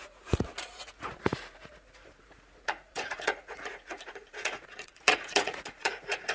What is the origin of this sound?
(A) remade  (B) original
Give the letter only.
A